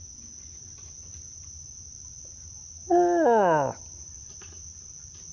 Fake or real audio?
real